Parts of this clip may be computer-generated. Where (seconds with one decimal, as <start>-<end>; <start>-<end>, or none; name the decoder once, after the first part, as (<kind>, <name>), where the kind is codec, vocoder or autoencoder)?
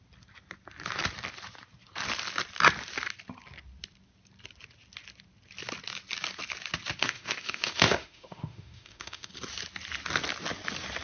7.0-9.3 (autoencoder, DAC-VAE)